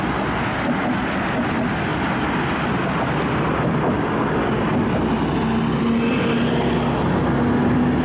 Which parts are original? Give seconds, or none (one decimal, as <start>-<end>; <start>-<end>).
0.0-8.0